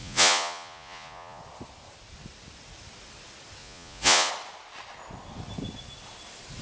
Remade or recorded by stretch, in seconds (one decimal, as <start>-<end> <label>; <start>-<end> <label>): 0.0-1.4 remade; 1.4-3.6 recorded; 3.6-4.3 remade; 4.3-6.6 recorded